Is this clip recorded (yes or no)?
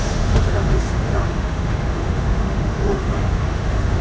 no